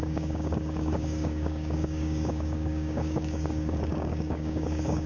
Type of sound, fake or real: fake